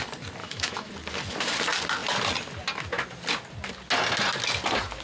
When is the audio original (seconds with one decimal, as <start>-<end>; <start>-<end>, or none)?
0.0-0.4; 0.9-5.0